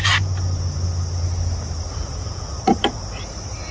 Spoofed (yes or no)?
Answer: no